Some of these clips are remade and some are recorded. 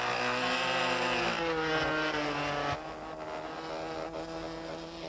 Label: recorded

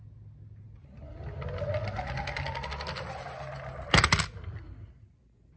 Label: recorded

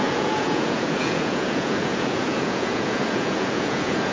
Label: remade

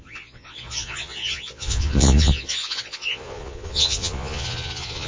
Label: remade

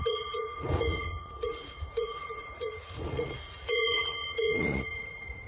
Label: remade